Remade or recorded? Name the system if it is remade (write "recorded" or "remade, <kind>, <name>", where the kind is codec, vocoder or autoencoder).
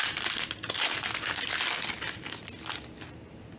recorded